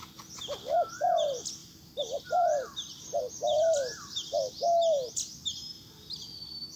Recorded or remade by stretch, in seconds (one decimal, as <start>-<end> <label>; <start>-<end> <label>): 0.0-1.6 recorded; 1.6-3.2 remade; 3.2-6.8 recorded